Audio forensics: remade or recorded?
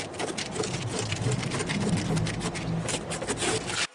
recorded